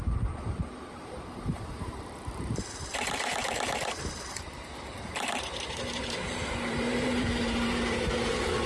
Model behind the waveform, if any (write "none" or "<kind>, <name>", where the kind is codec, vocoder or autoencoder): vocoder, BigVGAN v2